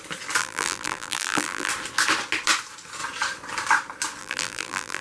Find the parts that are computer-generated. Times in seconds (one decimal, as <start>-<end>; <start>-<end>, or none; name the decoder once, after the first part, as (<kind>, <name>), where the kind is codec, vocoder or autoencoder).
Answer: 0.4-1.7 (vocoder, BigVGAN v2); 4.2-5.0